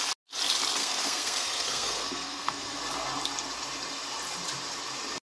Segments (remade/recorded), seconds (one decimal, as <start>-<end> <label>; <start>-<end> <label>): 0.0-0.8 recorded; 0.8-2.8 remade; 2.8-5.3 recorded